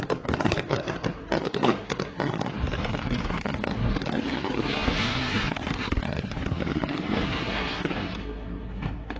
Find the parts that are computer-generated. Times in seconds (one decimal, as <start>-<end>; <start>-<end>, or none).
0.0-9.2

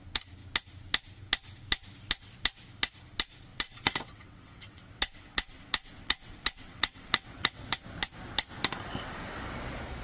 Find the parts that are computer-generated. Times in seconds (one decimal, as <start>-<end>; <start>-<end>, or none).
3.5-7.7

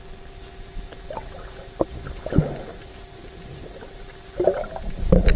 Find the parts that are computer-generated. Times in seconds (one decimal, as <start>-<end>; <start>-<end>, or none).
2.7-5.4

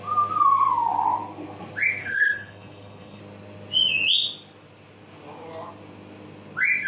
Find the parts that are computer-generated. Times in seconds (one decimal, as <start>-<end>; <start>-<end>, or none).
2.0-3.2

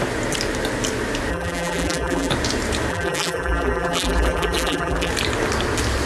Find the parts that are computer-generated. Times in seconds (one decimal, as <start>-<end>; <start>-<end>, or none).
1.3-2.3; 2.9-5.1

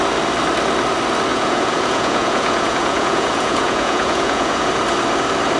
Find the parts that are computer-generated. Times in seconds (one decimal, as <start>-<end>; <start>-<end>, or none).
1.3-4.7

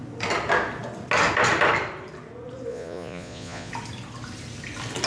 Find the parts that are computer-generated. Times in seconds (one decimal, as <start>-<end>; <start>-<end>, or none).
2.7-3.7

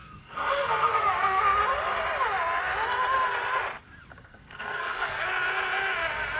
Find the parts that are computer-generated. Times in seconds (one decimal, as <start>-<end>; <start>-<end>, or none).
0.0-1.4; 4.1-5.3